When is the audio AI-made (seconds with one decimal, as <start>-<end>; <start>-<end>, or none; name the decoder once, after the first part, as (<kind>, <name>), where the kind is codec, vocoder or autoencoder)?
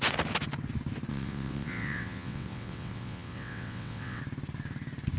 1.1-4.2 (vocoder, WaveNeXt)